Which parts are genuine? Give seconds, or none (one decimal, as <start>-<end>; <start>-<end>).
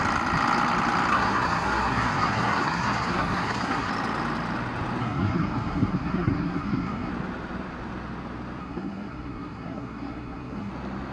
0.0-1.1; 3.9-5.0; 7.1-8.6; 10.7-11.1